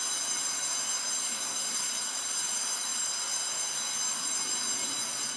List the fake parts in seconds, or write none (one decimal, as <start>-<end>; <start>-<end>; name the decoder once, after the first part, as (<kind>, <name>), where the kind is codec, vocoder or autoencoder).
1.2-1.9 (codec, SNAC)